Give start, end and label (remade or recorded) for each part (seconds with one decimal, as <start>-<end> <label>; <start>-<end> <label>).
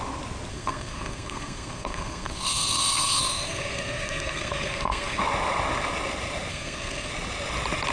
0.0-0.5 recorded; 0.5-5.2 remade; 5.2-6.5 recorded; 6.5-7.1 remade; 7.1-7.9 recorded